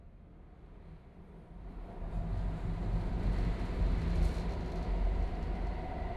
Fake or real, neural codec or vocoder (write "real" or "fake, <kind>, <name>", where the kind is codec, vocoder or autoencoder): real